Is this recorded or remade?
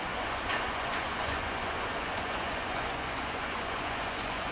remade